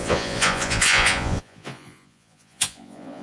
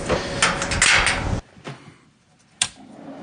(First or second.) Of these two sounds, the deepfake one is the first